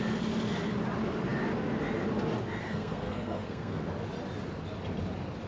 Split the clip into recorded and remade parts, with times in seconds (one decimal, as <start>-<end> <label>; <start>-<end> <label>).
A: 0.0-2.6 recorded; 2.6-3.8 remade; 3.8-5.5 recorded

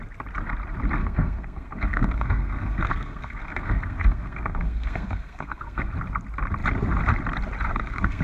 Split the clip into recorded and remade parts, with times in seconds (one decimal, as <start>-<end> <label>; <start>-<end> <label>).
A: 0.0-1.0 recorded; 1.0-5.9 remade; 5.9-7.7 recorded; 7.7-8.2 remade